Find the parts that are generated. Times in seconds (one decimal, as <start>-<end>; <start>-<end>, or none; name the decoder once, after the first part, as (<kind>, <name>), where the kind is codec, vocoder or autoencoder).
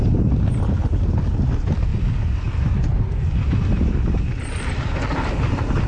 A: none